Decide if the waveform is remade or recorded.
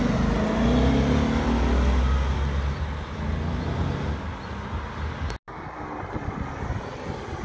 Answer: recorded